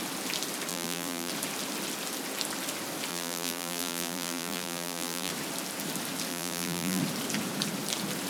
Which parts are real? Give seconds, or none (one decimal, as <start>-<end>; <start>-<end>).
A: 0.0-0.7; 1.3-3.1; 5.3-6.3; 7.0-8.3